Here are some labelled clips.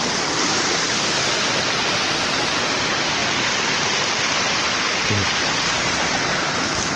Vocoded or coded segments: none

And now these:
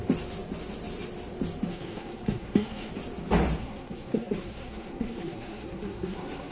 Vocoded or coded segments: 1.7-2.9 (codec, SNAC); 3.6-6.5